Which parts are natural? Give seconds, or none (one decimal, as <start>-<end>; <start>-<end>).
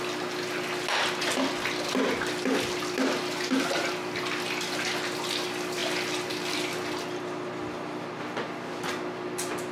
0.0-9.7